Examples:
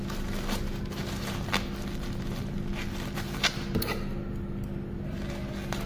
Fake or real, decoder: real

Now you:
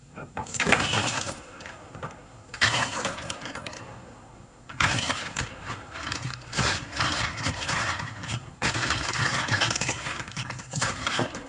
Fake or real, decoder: fake, codec, SNAC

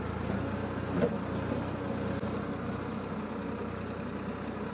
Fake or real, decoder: real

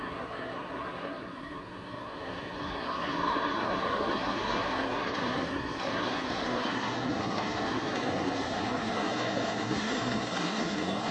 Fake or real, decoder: fake, codec, SNAC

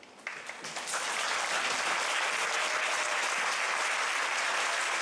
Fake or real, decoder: real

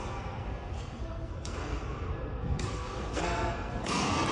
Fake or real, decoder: fake, codec, SNAC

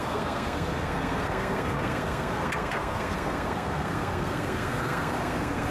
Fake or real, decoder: fake, codec, SNAC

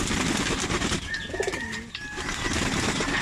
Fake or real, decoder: real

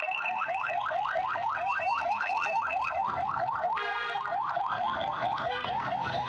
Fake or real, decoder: fake, codec, SNAC